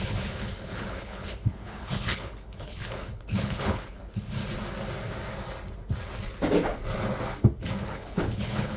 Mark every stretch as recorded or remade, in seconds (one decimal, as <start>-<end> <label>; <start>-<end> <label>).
0.0-4.4 remade; 4.4-7.8 recorded; 7.8-8.8 remade